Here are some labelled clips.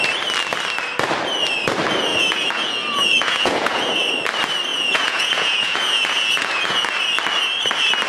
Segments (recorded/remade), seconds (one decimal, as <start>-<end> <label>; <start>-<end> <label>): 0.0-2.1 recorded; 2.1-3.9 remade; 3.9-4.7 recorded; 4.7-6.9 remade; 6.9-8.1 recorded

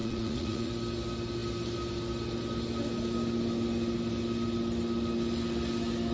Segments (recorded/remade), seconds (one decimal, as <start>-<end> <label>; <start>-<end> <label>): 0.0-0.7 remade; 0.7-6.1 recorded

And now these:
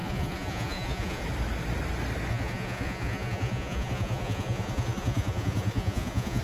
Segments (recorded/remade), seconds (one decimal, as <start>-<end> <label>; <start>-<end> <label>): 0.0-1.2 remade; 1.2-2.3 recorded; 2.3-6.4 remade

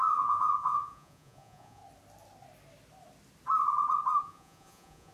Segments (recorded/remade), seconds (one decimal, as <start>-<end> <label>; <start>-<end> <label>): 0.0-1.8 remade; 1.8-4.2 recorded; 4.2-5.1 remade

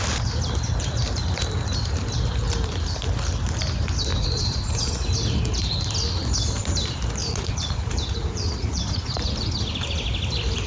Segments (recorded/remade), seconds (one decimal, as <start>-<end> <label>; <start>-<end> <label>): 0.0-4.1 recorded; 4.1-4.9 remade; 4.9-7.2 recorded; 7.2-9.5 remade; 9.5-10.7 recorded